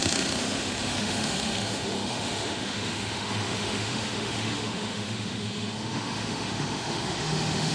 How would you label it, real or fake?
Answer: fake